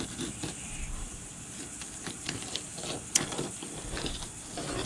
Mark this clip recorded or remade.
recorded